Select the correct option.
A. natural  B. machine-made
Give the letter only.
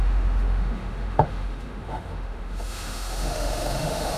B